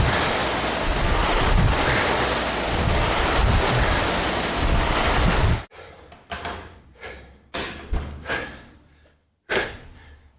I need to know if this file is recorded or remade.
recorded